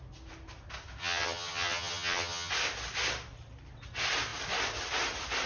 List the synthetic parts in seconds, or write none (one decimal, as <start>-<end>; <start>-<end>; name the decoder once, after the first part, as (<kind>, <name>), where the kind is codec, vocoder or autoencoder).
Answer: 1.0-2.5 (vocoder, HiFi-GAN)

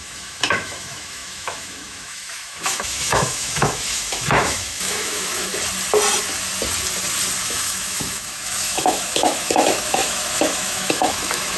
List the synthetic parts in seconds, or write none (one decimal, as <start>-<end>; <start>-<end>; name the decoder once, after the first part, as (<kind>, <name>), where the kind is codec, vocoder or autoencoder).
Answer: 0.0-5.5 (autoencoder, DAC-VAE); 7.4-11.6

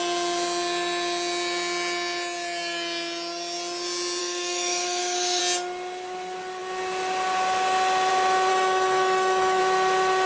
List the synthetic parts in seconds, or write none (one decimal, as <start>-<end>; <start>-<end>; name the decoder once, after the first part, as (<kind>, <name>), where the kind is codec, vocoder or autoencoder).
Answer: 4.2-5.4 (autoencoder, DAC-VAE); 8.5-9.6

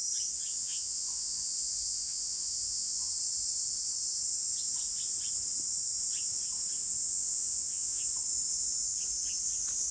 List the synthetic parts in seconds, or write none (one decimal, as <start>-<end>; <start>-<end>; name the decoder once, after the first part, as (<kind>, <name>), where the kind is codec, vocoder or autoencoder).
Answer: 0.6-3.1 (vocoder, Vocos); 7.0-8.0

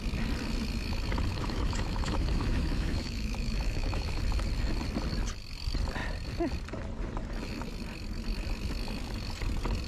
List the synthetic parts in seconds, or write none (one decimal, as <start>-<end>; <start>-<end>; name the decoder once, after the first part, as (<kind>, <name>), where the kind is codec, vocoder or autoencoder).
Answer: 1.3-4.2 (autoencoder, DAC-VAE)

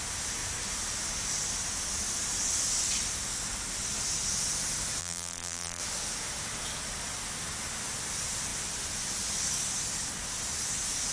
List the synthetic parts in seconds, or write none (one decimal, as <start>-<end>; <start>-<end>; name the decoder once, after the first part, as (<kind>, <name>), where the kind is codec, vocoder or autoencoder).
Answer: 5.0-5.8 (vocoder, BigVGAN v2)

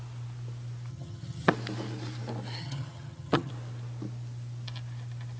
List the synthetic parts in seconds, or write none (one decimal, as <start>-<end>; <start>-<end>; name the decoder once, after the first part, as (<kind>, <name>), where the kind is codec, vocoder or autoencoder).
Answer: 0.9-1.5 (vocoder, HiFi-GAN); 2.6-3.5

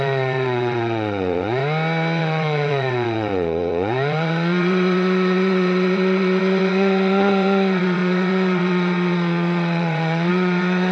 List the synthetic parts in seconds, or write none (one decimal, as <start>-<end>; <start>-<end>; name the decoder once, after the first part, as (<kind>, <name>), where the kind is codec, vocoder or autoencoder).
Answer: 0.0-1.6 (vocoder, WaveNeXt); 2.2-10.9